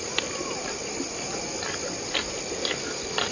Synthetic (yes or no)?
no